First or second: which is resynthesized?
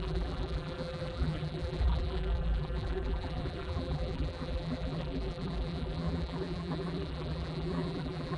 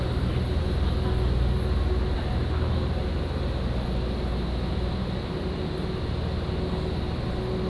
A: first